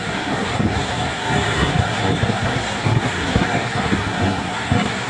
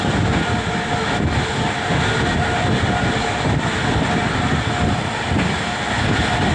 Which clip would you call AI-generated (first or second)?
first